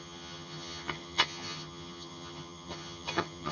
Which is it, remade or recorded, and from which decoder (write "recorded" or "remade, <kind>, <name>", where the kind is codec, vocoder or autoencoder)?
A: remade, vocoder, HiFi-GAN